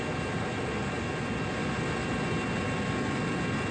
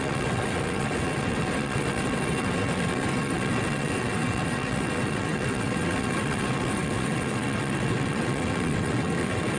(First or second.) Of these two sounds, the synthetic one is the second